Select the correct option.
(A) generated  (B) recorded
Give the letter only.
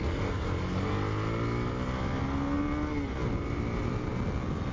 B